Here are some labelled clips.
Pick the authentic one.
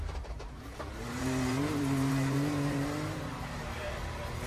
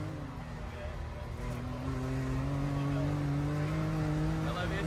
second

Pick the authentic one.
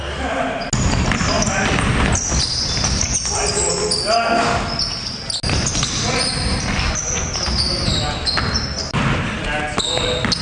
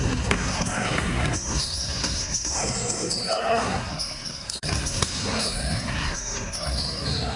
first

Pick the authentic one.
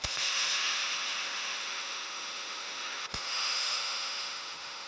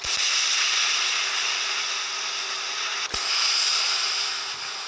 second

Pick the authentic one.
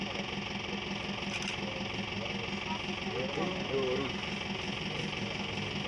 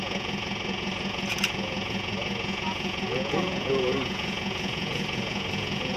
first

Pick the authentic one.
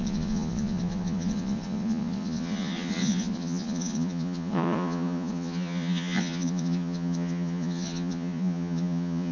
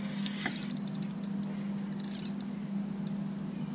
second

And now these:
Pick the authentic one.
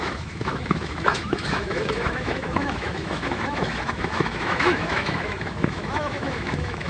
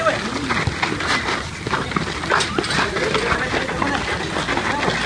second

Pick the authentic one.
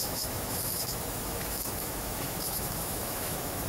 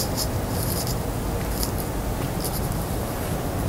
second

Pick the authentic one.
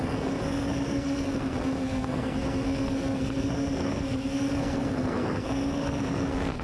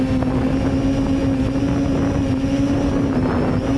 second